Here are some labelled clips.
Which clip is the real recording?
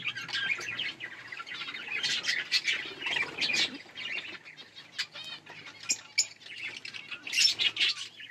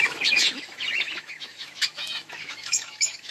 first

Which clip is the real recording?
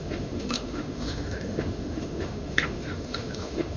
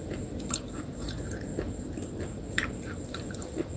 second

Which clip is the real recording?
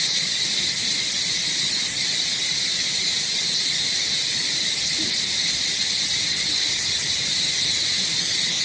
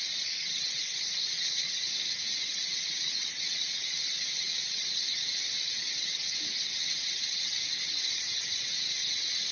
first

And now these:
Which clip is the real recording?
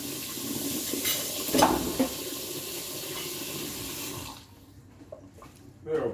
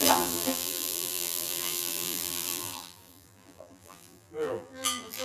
first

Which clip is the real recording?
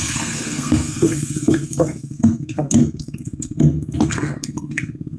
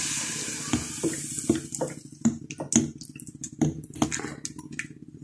second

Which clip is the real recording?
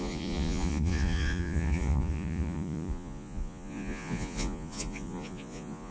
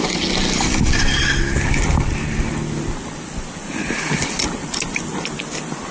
second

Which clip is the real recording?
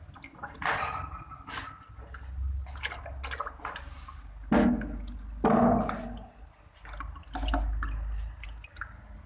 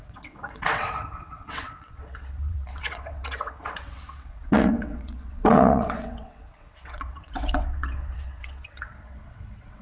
first